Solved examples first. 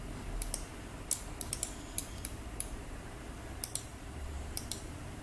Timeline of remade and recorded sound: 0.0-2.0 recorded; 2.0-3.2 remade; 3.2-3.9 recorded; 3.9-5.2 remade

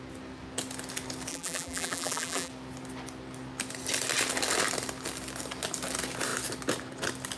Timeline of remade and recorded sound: 0.0-1.3 recorded; 1.3-2.5 remade; 2.5-7.4 recorded

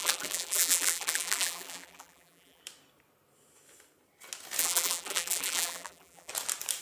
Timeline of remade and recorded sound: 0.0-2.6 remade; 2.6-4.6 recorded; 4.6-6.3 remade; 6.3-6.8 recorded

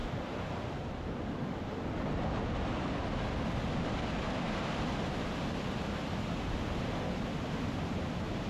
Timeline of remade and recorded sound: 0.0-1.2 remade; 1.2-8.5 recorded